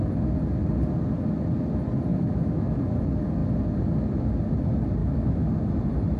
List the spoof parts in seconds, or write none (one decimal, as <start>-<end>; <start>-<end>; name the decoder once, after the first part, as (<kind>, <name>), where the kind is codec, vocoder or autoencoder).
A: 2.1-2.8 (autoencoder, DAC-VAE); 5.0-5.7